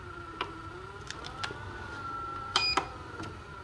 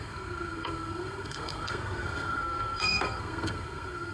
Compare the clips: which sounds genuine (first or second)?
first